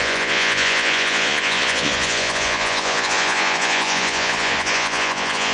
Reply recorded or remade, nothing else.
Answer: remade